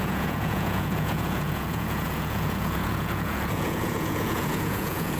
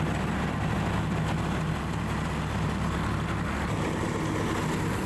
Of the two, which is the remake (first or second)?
first